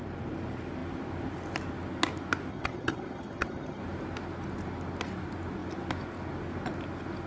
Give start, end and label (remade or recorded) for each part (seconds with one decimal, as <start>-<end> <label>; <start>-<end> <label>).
0.0-2.5 recorded; 2.5-3.8 remade; 3.8-7.3 recorded